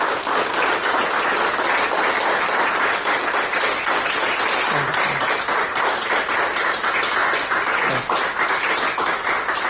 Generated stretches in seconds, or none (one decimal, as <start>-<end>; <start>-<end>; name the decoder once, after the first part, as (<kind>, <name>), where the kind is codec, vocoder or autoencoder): 7.2-7.9 (vocoder, Vocos)